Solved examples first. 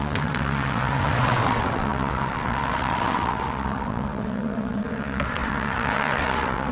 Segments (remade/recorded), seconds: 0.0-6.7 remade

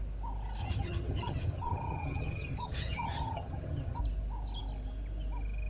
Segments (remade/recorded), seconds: 0.0-0.6 recorded; 0.6-4.0 remade; 4.0-5.7 recorded

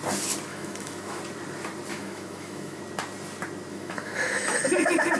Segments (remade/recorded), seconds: 0.0-0.5 recorded; 0.5-1.2 remade; 1.2-1.9 recorded; 1.9-2.8 remade; 2.8-3.7 recorded; 3.7-4.6 remade; 4.6-5.2 recorded